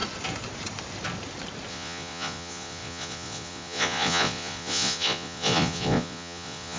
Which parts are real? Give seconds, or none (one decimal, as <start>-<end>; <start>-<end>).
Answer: 0.0-1.7